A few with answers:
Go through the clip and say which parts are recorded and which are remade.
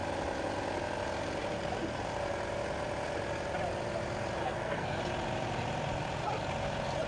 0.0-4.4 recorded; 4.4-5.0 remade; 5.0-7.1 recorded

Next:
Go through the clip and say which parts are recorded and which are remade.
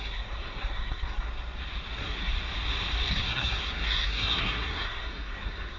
0.0-1.3 remade; 1.3-1.9 recorded; 1.9-2.3 remade; 2.3-3.1 recorded; 3.1-5.8 remade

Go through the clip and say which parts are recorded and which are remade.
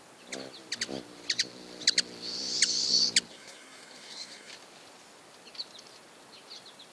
0.0-3.3 recorded; 3.3-4.5 remade; 4.5-6.9 recorded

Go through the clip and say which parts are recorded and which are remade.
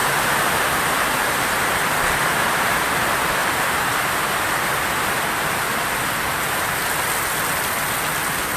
0.0-8.6 recorded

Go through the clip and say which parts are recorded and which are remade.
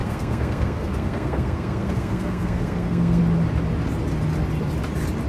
0.0-3.2 remade; 3.2-5.3 recorded